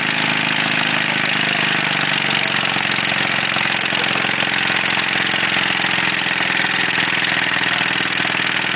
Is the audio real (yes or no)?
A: yes